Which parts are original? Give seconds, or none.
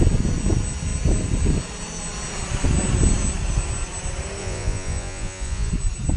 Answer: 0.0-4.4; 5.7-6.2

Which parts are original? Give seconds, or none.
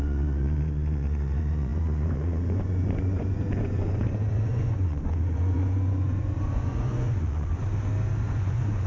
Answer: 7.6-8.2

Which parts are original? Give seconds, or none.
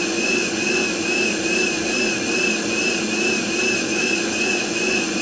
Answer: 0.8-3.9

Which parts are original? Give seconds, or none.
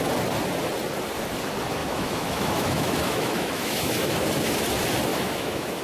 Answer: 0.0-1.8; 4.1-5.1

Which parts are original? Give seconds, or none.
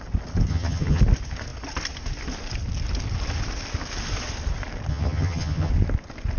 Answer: 0.0-0.5; 1.0-4.9; 5.7-6.4